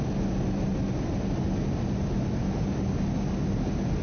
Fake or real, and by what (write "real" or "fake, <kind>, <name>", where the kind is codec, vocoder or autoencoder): real